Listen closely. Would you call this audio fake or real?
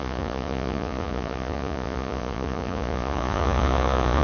fake